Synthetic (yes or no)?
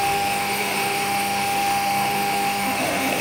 yes